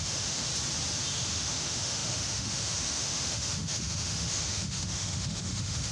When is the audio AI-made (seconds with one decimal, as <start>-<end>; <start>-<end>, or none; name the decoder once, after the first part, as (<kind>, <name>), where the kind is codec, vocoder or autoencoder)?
0.0-0.5 (autoencoder, DAC-VAE); 1.1-5.9